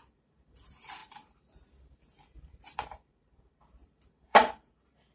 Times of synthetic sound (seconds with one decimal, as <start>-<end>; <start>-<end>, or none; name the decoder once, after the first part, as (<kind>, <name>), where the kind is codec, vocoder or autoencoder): 0.0-5.1 (vocoder, BigVGAN v2)